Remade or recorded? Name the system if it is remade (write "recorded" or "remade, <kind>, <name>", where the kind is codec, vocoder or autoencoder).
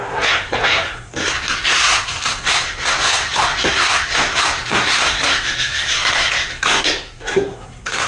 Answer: remade, codec, SNAC